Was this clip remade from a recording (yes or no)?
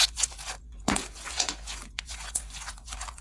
yes